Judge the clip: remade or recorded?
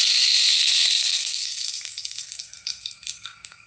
remade